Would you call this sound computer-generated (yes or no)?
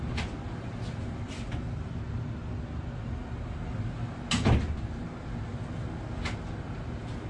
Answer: no